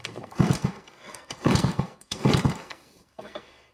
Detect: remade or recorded remade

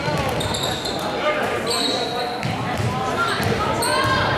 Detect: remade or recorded recorded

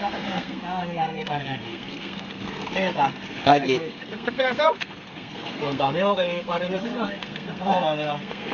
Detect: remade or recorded remade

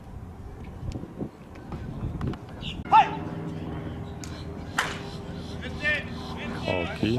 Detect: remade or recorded recorded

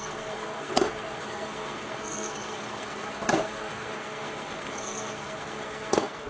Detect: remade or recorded remade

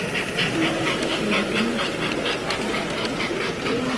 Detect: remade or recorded recorded